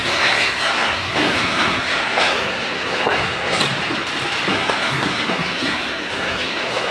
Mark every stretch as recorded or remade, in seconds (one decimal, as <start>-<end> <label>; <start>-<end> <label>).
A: 0.0-3.6 remade; 3.6-4.5 recorded; 4.5-6.9 remade